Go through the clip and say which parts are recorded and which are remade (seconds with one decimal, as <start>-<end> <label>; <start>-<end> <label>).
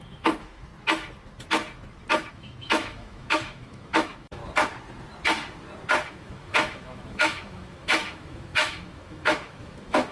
0.0-0.7 remade; 0.7-2.3 recorded; 2.3-4.4 remade; 4.4-6.1 recorded; 6.1-10.1 remade